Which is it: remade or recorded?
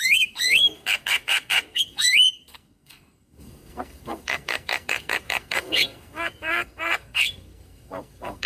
remade